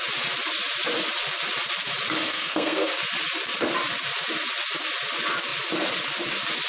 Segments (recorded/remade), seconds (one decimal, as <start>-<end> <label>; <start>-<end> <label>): 0.0-2.2 recorded; 2.2-2.9 remade; 2.9-6.7 recorded

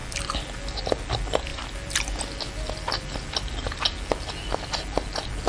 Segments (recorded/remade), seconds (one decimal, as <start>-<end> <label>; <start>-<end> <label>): 0.0-0.8 remade; 0.8-1.5 recorded; 1.5-3.8 remade; 3.8-5.5 recorded

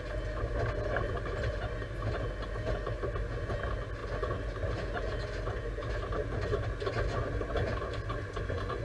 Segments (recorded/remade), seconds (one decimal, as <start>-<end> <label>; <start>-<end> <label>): 0.0-8.8 recorded

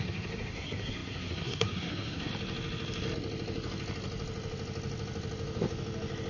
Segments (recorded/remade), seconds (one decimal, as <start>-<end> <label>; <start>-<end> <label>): 0.0-2.3 remade; 2.3-6.3 recorded

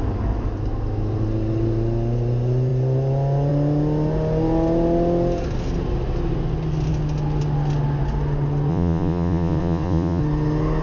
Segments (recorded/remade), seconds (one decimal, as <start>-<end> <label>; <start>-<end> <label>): 0.0-8.7 recorded; 8.7-10.2 remade; 10.2-10.8 recorded

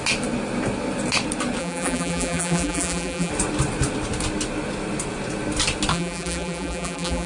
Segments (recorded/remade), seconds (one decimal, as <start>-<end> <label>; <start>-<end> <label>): 0.0-1.6 recorded; 1.6-3.3 remade; 3.3-5.9 recorded; 5.9-7.3 remade

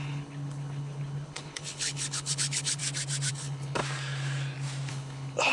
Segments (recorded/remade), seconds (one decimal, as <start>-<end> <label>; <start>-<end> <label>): 0.0-2.8 remade; 2.8-3.3 recorded; 3.3-3.8 remade; 3.8-4.9 recorded; 4.9-5.5 remade

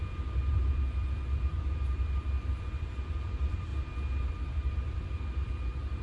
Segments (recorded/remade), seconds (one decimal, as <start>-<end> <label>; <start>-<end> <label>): 0.0-0.5 recorded; 0.5-3.7 remade; 3.7-4.3 recorded; 4.3-6.0 remade